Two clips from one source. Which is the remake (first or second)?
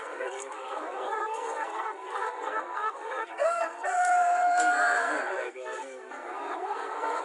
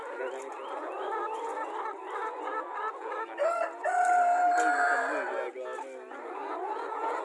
first